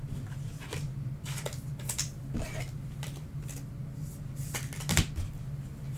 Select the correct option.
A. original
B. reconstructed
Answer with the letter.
A